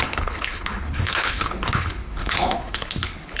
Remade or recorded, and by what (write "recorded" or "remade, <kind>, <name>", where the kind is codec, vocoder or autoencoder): remade, codec, HILCodec